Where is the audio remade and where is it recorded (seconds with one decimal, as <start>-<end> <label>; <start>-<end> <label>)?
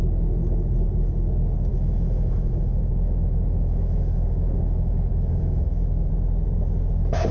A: 0.0-1.7 recorded; 1.7-6.1 remade; 6.1-7.3 recorded